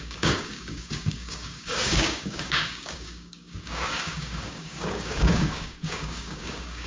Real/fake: fake